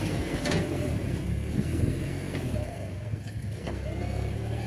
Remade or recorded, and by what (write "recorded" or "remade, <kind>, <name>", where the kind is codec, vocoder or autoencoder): remade, codec, SNAC